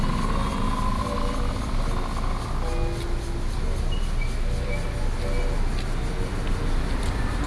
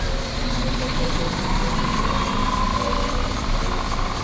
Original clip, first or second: first